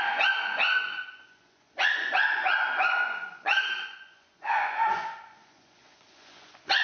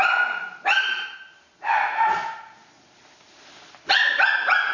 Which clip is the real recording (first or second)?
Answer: second